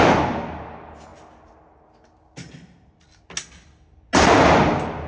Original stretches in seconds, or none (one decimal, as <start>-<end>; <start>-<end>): 0.0-5.1